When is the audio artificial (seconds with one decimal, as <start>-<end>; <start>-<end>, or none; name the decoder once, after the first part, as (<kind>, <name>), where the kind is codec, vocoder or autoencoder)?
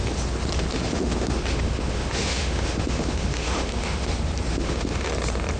0.7-4.1 (autoencoder, DAC-VAE); 4.5-5.1